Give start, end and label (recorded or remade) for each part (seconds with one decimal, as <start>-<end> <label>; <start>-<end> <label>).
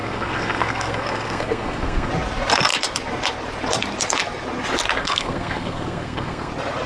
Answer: 0.0-2.1 remade; 2.1-5.0 recorded; 5.0-6.5 remade; 6.5-6.9 recorded